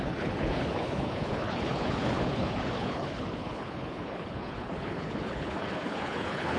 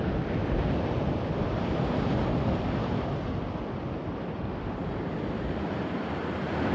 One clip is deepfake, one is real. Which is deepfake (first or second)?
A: first